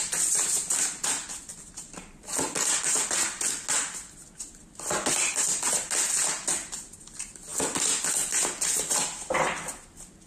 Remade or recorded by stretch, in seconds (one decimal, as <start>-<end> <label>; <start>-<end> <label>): 0.0-10.3 recorded